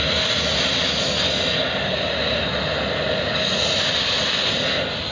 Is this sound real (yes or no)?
yes